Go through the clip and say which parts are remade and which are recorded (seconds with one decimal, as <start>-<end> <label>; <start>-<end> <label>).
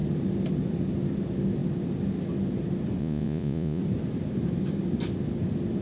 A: 0.0-3.0 recorded; 3.0-3.8 remade; 3.8-5.8 recorded